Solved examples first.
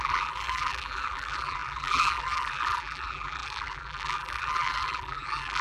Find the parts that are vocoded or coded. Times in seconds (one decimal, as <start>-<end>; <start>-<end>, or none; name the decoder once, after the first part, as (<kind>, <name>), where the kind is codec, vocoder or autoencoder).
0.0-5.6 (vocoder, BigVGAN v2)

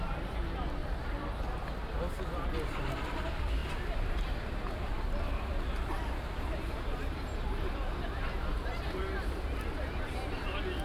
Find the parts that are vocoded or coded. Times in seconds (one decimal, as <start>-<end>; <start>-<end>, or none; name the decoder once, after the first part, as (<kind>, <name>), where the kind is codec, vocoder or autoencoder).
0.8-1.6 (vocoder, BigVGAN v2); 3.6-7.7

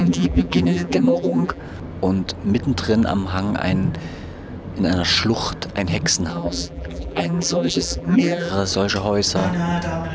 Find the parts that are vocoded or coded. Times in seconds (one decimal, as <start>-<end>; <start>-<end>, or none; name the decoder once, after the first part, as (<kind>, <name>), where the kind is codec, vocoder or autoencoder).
0.0-1.6 (vocoder, BigVGAN v2); 6.3-8.5

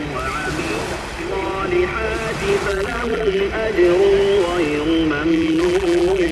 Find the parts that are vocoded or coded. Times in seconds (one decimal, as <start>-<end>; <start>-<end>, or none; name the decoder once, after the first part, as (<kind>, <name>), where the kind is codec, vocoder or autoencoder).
2.7-3.4 (vocoder, BigVGAN v2); 5.3-6.3

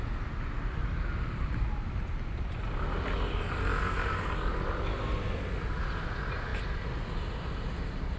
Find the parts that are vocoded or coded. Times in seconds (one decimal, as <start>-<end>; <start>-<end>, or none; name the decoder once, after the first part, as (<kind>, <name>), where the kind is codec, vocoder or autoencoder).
none

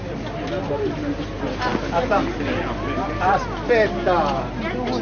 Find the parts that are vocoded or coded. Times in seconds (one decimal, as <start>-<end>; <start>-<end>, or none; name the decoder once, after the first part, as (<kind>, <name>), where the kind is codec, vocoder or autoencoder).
none

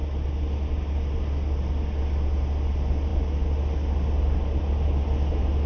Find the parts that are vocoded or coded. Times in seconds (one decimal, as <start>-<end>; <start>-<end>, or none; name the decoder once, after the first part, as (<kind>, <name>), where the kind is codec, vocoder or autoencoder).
none

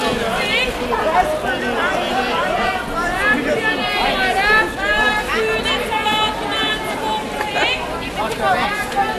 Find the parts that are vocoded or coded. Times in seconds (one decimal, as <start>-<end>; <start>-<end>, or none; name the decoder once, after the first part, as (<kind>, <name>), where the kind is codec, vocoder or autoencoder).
2.1-2.6 (vocoder, BigVGAN v2); 4.9-6.4